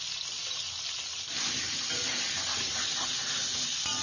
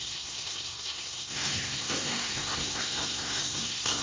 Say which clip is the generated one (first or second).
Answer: second